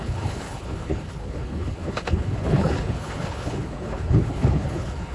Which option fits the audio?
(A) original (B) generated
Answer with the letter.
B